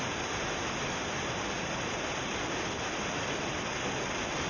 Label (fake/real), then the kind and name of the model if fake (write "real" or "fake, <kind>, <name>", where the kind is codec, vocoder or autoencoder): real